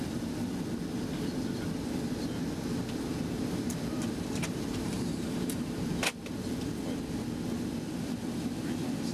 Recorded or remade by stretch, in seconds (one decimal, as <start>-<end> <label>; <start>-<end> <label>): 0.0-3.1 recorded; 3.1-6.1 remade; 6.1-9.1 recorded